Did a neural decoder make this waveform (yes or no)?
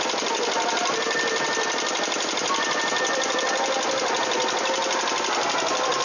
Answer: no